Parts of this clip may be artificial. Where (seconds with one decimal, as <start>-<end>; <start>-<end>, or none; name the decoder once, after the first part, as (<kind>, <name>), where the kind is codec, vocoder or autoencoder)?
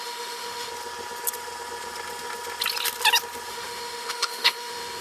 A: 0.0-0.7 (autoencoder, DAC-VAE); 3.5-5.0